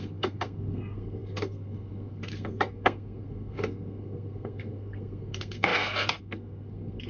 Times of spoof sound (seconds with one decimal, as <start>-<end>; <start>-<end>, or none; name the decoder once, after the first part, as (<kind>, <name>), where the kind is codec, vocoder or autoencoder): 0.0-7.1 (codec, SNAC)